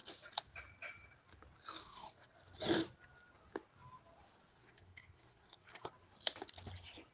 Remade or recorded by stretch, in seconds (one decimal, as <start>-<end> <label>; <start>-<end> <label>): 0.0-1.8 recorded; 1.8-2.3 remade; 2.3-4.5 recorded; 4.5-5.9 remade; 5.9-7.1 recorded